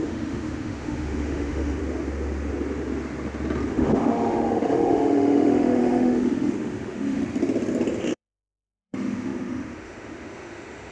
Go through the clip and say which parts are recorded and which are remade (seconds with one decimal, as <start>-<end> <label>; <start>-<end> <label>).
0.0-1.8 remade; 1.8-3.7 recorded; 3.7-7.2 remade; 7.2-8.0 recorded; 8.0-10.9 remade